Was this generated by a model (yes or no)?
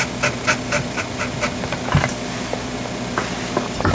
no